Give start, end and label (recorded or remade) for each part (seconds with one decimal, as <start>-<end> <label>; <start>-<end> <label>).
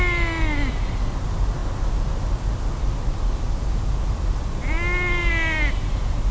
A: 0.0-6.3 recorded